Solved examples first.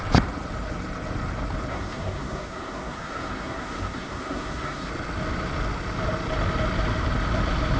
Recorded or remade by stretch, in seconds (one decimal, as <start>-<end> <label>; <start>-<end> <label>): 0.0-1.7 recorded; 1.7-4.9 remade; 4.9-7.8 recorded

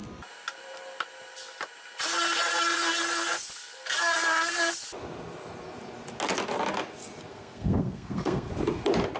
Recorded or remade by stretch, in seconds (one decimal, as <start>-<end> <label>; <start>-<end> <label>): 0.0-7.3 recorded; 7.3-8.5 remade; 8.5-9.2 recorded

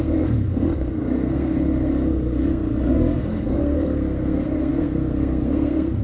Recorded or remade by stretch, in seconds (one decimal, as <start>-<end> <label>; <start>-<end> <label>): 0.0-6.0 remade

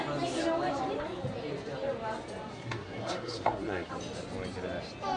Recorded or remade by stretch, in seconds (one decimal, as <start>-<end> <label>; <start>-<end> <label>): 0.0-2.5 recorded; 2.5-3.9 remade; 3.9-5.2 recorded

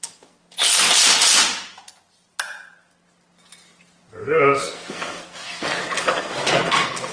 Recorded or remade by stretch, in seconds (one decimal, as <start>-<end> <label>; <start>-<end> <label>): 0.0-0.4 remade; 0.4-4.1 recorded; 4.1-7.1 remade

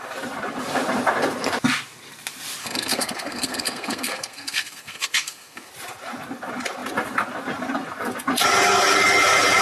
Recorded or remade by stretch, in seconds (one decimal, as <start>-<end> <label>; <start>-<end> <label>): 0.0-2.6 recorded; 2.6-5.7 remade; 5.7-9.6 recorded

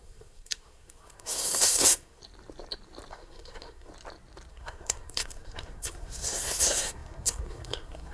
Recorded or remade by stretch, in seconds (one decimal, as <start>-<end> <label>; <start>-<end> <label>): 0.0-2.2 remade; 2.2-3.1 recorded; 3.1-3.9 remade; 3.9-4.5 recorded; 4.5-8.1 remade